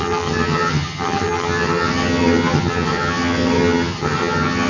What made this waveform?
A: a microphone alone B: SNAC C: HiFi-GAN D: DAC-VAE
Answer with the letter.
C